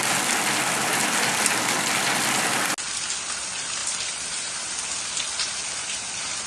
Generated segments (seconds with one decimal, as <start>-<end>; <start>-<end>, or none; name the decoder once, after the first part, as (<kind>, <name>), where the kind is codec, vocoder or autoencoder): none